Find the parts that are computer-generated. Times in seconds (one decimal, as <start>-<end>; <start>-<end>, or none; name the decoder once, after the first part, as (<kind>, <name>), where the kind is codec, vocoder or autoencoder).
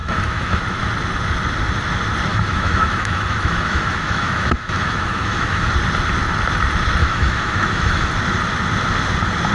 0.0-0.6 (autoencoder, DAC-VAE); 2.3-5.7; 7.0-8.1